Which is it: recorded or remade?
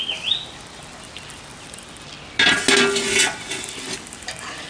recorded